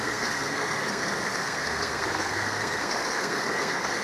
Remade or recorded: remade